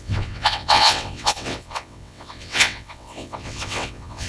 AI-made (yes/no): yes